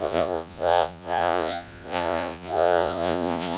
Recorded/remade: remade